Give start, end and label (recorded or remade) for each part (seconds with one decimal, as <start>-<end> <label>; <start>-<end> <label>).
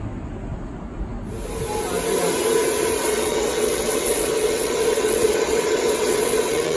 0.0-3.0 recorded; 3.0-6.8 remade